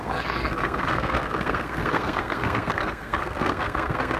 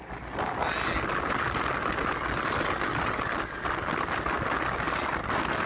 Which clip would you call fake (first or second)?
first